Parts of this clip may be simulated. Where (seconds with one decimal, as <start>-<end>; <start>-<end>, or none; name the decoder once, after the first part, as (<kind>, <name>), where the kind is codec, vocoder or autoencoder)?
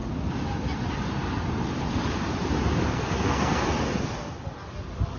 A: 2.9-3.6 (codec, SNAC)